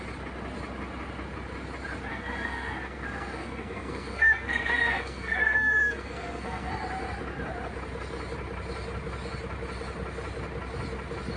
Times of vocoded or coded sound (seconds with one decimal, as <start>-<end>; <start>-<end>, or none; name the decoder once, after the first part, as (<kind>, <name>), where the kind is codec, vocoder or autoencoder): 2.1-6.7 (codec, SNAC)